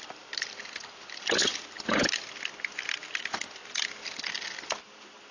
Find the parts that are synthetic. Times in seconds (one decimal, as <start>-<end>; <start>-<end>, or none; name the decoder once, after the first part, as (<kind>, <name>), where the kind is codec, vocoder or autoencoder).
1.4-2.0 (vocoder, BigVGAN v2)

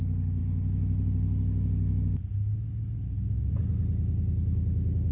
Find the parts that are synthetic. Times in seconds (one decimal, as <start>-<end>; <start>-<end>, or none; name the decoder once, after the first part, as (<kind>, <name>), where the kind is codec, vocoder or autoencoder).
none

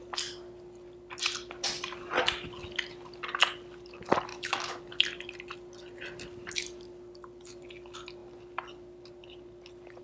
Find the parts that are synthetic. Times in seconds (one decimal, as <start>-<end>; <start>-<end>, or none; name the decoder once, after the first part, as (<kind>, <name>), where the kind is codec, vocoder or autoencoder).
4.3-4.8 (autoencoder, DAC-VAE)

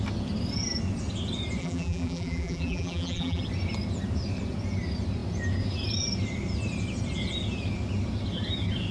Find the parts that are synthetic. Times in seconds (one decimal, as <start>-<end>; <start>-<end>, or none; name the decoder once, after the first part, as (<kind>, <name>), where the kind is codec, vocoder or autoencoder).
1.6-3.4 (vocoder, BigVGAN v2)

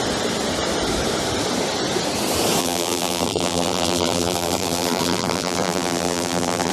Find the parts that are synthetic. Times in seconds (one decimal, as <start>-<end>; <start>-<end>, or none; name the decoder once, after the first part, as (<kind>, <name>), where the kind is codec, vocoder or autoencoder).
2.6-6.7 (vocoder, BigVGAN v2)

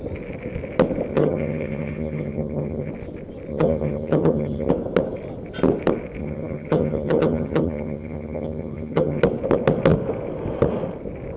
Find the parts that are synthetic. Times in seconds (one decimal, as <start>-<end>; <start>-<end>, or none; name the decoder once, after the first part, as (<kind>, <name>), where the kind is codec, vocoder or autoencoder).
1.1-2.9 (vocoder, HiFi-GAN); 3.5-4.7; 6.2-9.2

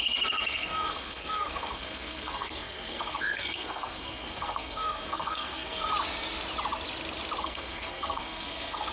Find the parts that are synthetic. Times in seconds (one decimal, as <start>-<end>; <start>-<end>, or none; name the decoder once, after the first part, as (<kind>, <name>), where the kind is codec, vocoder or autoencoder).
0.0-5.9 (codec, SNAC); 7.4-8.9

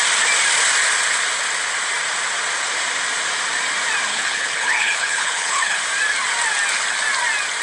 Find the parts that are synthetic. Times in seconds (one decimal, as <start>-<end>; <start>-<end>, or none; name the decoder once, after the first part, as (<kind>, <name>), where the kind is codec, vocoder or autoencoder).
4.1-5.8 (codec, HILCodec)